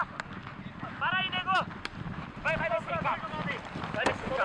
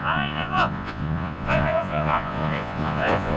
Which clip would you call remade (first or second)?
second